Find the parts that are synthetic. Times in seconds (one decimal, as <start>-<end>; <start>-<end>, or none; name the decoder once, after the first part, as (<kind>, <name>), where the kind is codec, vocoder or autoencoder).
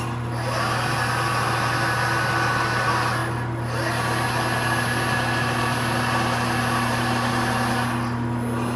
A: none